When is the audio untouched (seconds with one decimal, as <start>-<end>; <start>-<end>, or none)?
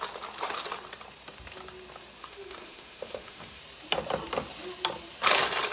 0.0-2.2; 3.6-5.7